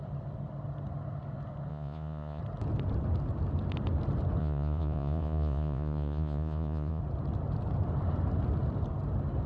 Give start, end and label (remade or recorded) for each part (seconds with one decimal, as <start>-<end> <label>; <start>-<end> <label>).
0.0-1.7 recorded; 1.7-2.4 remade; 2.4-4.4 recorded; 4.4-7.0 remade; 7.0-9.5 recorded